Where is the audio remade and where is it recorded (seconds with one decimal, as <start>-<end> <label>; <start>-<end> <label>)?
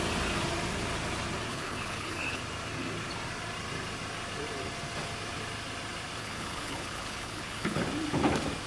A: 0.0-1.5 recorded; 1.5-2.4 remade; 2.4-6.2 recorded; 6.2-7.8 remade; 7.8-8.7 recorded